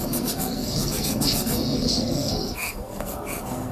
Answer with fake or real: fake